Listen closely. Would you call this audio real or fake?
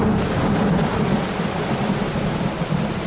real